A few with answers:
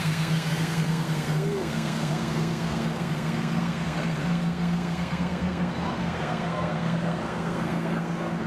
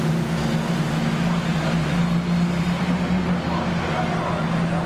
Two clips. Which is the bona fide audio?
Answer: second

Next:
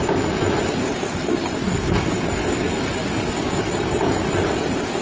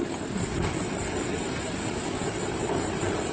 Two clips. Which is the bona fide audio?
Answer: first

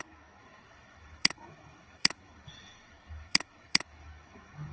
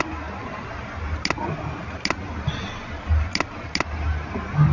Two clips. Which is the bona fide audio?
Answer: second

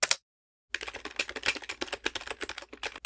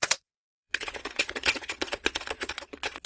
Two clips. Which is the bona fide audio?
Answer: first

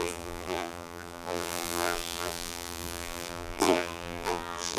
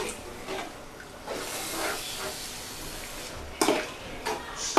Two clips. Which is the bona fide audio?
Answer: second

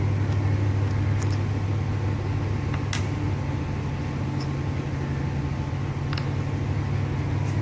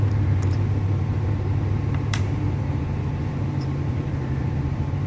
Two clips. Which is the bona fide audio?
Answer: first